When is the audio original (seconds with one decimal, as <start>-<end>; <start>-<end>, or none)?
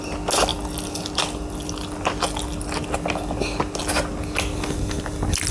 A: 0.0-5.5